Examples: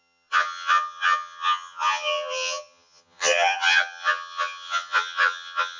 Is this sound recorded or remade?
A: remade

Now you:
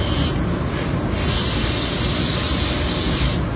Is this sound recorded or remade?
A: recorded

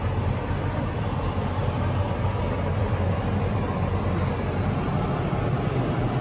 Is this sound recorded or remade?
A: recorded